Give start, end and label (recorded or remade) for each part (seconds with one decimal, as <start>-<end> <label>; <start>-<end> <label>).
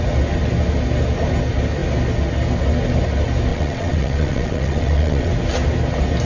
0.0-3.5 recorded; 3.5-5.3 remade; 5.3-6.3 recorded